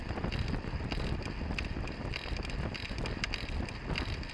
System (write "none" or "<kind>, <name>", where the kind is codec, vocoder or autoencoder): none